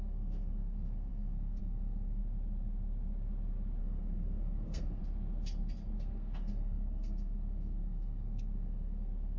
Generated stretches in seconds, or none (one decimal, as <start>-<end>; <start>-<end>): 0.0-2.2; 3.8-5.0; 6.0-9.4